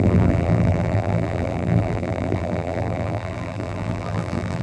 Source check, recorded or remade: remade